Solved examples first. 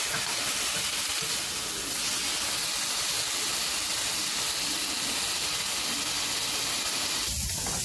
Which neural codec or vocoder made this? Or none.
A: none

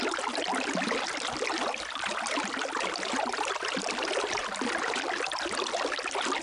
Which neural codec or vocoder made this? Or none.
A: none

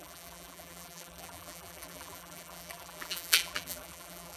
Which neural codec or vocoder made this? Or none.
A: vocoder, BigVGAN v2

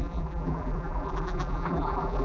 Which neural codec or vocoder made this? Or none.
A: vocoder, BigVGAN v2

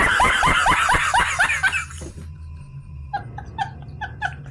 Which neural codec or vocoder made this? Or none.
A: vocoder, BigVGAN v2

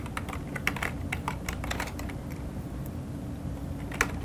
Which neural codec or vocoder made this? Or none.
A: none